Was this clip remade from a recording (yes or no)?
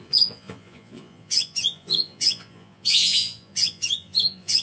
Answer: yes